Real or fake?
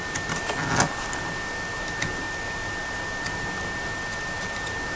real